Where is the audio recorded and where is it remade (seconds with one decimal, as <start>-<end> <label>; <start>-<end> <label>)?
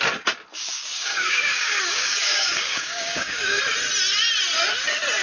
0.0-0.5 recorded; 0.5-3.6 remade; 3.6-5.2 recorded